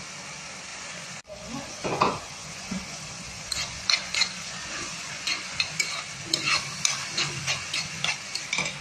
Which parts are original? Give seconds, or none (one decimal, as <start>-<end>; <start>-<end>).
0.0-0.7; 5.9-7.1; 8.4-8.8